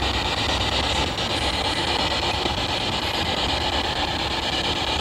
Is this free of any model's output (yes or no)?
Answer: yes